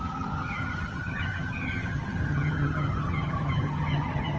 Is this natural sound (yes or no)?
no